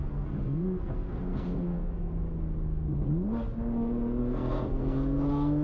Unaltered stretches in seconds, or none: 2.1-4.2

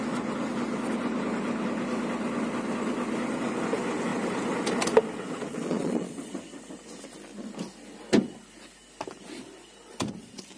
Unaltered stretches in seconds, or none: 0.0-5.5; 6.3-10.6

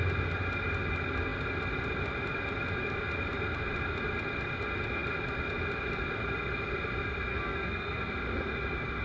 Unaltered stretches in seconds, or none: 0.0-7.3; 8.1-9.0

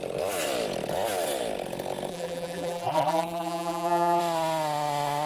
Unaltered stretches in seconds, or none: 0.0-2.1; 4.2-5.3

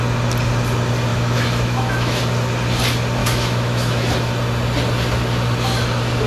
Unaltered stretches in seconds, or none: 0.0-1.1; 2.2-3.2; 4.1-6.3

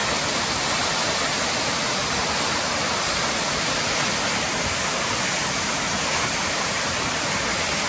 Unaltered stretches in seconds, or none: 0.0-7.9